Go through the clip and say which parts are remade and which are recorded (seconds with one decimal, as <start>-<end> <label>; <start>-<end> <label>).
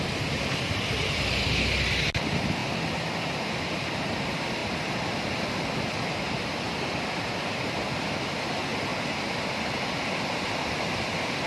0.0-4.6 remade; 4.6-6.3 recorded; 6.3-11.5 remade